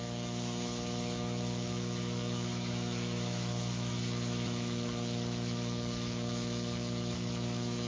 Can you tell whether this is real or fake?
fake